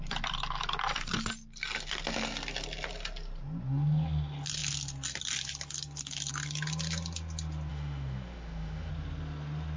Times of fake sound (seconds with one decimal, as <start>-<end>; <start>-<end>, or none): 7.7-8.9